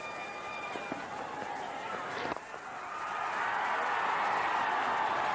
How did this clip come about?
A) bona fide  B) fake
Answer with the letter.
A